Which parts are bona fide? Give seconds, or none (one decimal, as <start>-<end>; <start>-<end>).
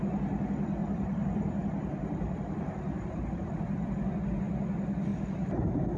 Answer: 0.0-0.8; 4.2-5.1